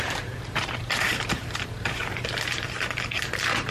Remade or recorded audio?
remade